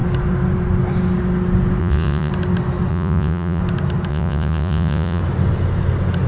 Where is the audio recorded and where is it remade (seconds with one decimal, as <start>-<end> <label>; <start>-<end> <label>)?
0.0-1.8 recorded; 1.8-2.3 remade; 2.3-2.9 recorded; 2.9-3.6 remade; 3.6-4.1 recorded; 4.1-5.2 remade; 5.2-6.3 recorded